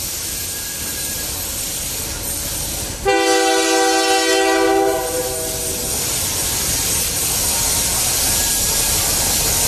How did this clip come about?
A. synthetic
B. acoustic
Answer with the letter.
B